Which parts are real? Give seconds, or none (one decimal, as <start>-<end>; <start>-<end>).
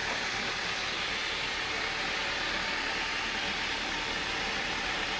0.0-5.2